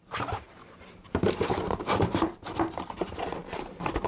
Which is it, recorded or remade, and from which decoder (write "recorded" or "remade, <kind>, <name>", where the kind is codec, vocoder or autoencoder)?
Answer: remade, vocoder, BigVGAN v2